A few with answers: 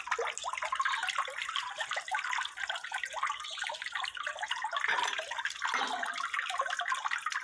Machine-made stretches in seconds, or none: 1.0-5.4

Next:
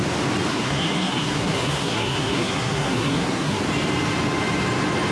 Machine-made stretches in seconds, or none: 0.5-3.6

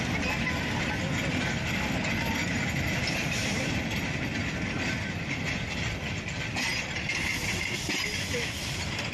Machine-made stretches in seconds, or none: 2.4-3.8

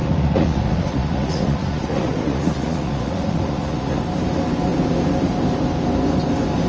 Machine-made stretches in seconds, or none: 0.0-4.0

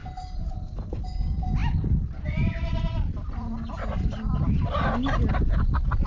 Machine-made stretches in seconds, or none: none